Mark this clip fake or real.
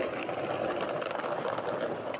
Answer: fake